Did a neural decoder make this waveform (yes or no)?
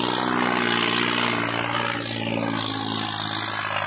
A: no